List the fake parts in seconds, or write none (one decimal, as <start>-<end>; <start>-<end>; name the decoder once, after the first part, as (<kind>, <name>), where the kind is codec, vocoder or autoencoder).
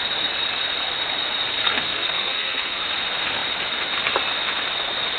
1.6-2.8 (codec, SNAC)